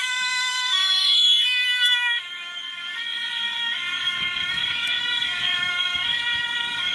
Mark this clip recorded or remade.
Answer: remade